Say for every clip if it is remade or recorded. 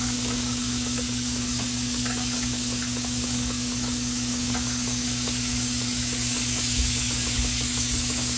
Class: remade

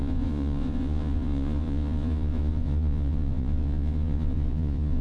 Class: remade